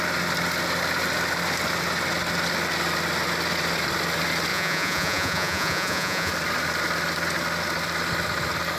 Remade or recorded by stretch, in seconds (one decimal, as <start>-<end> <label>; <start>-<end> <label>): 0.0-4.5 recorded; 4.5-6.3 remade; 6.3-8.8 recorded